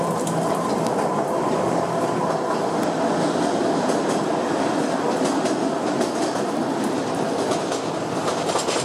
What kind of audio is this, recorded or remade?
remade